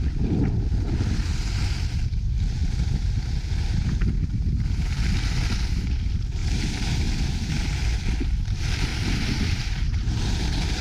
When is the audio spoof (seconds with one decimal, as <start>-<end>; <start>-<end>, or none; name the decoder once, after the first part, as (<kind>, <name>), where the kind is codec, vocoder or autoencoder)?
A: 6.4-7.5 (vocoder, BigVGAN v2); 8.9-10.2